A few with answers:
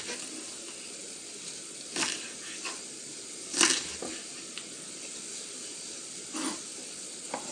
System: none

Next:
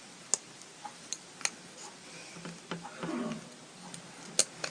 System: none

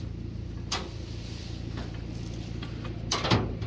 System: none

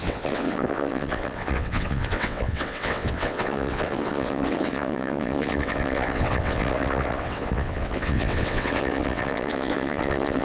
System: vocoder, WaveNeXt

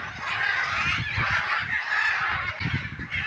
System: none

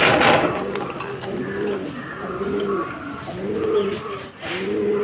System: none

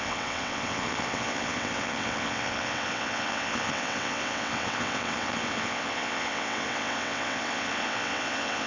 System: vocoder, WaveNeXt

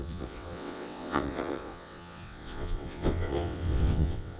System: vocoder, WaveNeXt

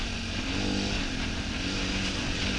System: none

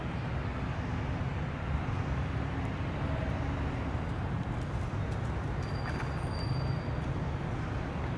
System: none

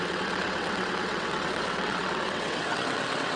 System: vocoder, WaveNeXt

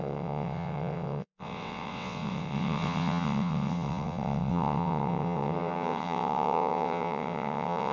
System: vocoder, WaveNeXt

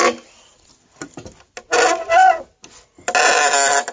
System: none